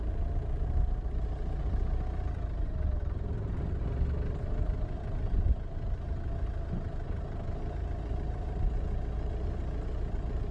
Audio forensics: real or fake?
real